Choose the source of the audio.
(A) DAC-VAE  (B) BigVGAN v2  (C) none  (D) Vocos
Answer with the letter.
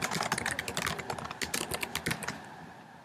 C